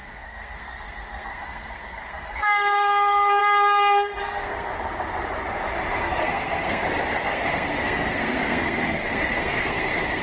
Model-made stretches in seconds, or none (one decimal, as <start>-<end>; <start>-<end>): 0.0-3.4; 4.2-4.7; 6.0-6.8; 7.3-10.2